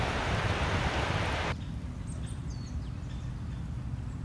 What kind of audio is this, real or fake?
real